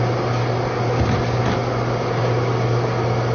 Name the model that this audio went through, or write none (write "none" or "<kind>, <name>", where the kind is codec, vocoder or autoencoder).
none